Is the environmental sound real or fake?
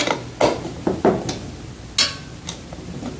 real